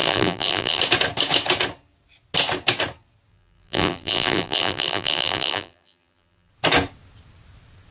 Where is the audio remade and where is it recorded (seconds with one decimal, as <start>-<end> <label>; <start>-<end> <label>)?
0.0-0.8 remade; 0.8-3.3 recorded; 3.3-6.5 remade; 6.5-7.9 recorded